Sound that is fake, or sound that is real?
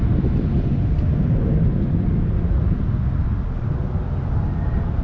real